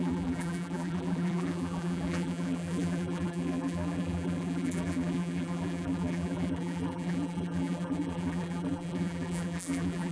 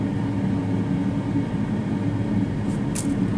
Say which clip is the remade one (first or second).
first